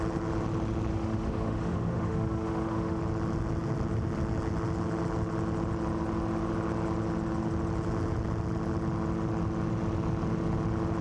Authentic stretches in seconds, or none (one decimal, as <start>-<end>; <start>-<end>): 0.0-0.9; 3.0-11.0